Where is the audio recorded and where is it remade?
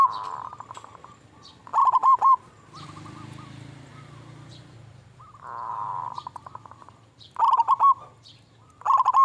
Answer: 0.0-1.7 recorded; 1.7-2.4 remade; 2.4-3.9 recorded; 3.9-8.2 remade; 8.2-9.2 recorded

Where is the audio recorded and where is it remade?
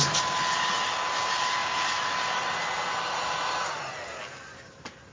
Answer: 0.0-1.6 recorded; 1.6-5.1 remade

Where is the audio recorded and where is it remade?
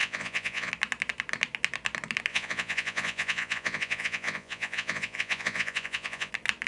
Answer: 0.0-0.7 remade; 0.7-2.3 recorded; 2.3-6.3 remade; 6.3-6.7 recorded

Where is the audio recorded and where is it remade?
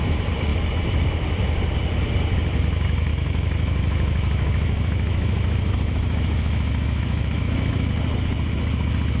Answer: 0.0-3.1 recorded; 3.1-7.9 remade; 7.9-9.2 recorded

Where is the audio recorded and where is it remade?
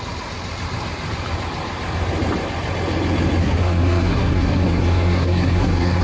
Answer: 0.0-3.4 recorded; 3.4-6.0 remade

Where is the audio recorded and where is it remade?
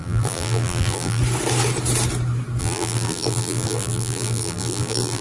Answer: 0.0-1.2 remade; 1.2-2.6 recorded; 2.6-5.2 remade